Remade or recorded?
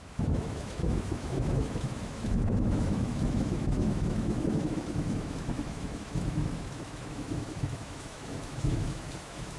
remade